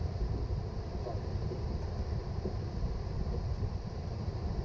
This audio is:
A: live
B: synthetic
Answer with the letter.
B